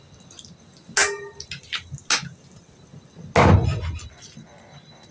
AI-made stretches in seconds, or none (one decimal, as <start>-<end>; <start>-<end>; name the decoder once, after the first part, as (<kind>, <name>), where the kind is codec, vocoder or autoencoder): none